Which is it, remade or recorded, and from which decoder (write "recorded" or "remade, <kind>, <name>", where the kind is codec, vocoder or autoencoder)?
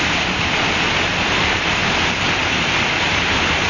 recorded